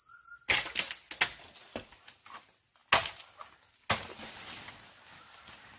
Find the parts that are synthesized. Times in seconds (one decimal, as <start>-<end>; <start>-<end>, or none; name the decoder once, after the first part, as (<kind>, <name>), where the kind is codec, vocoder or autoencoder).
none